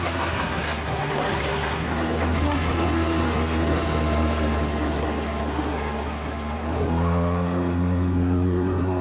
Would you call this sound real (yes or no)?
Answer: no